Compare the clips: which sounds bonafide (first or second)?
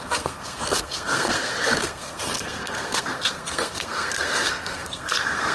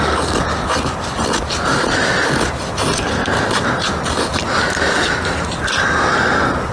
second